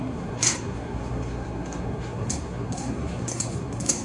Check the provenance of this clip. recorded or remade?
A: remade